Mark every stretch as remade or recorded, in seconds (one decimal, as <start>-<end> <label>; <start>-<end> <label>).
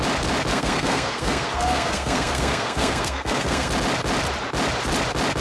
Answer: 0.0-0.5 recorded; 0.5-3.7 remade; 3.7-5.4 recorded